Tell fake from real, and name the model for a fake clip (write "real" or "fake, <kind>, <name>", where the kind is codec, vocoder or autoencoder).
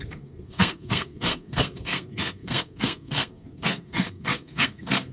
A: fake, codec, SNAC